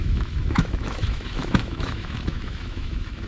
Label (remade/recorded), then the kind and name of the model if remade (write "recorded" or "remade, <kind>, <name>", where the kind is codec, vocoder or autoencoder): remade, autoencoder, DAC-VAE